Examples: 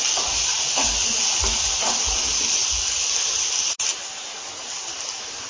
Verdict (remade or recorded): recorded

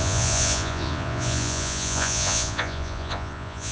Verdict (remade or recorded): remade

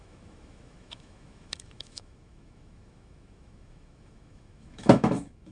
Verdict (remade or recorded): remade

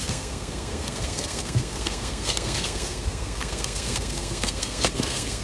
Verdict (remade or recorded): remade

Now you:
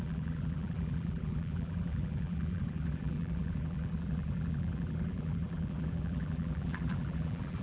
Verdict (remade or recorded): remade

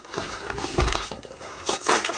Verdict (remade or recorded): remade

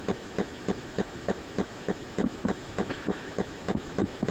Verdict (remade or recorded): remade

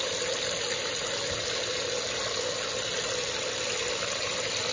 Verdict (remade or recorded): recorded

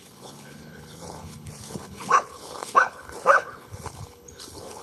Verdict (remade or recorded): remade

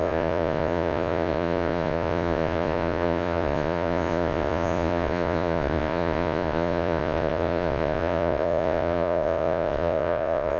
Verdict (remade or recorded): remade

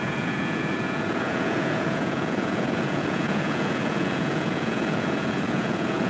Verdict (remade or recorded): remade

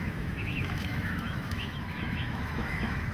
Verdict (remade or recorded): remade